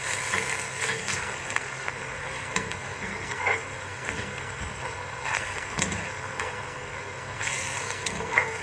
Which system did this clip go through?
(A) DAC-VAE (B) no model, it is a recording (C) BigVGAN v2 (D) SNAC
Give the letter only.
D